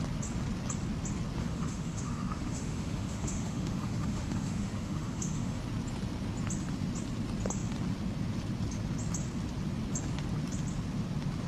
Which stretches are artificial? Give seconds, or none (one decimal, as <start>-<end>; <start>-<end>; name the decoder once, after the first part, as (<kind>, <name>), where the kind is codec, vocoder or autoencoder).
1.4-5.6 (autoencoder, DAC-VAE)